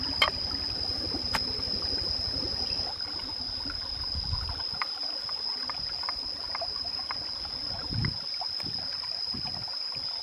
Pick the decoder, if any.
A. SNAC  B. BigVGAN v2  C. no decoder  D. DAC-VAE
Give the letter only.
C